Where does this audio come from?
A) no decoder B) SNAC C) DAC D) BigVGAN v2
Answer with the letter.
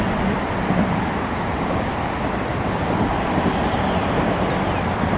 A